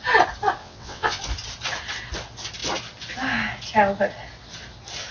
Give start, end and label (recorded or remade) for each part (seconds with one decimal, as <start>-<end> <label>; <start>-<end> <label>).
0.0-0.6 recorded; 0.6-1.2 remade; 1.2-5.1 recorded